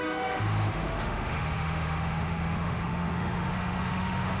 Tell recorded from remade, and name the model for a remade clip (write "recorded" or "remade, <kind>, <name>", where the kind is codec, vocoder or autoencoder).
remade, autoencoder, DAC-VAE